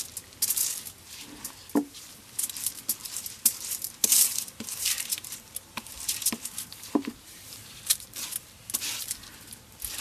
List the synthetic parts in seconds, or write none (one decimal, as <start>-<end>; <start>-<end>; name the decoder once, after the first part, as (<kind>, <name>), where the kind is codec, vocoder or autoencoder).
3.0-7.8 (vocoder, BigVGAN v2)